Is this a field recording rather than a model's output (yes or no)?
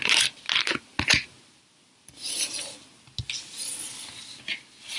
yes